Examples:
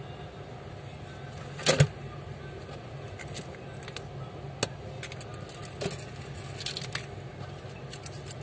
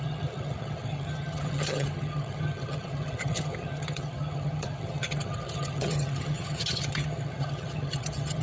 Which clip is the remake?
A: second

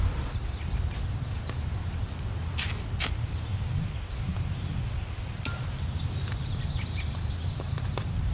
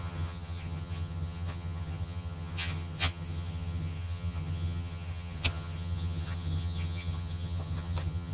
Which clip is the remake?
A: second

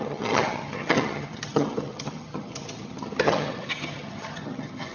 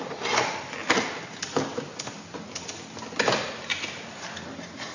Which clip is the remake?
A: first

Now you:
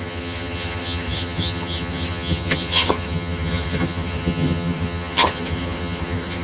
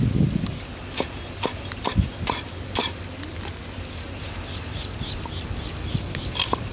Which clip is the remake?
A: first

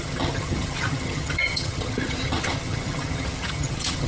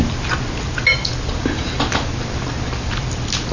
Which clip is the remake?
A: first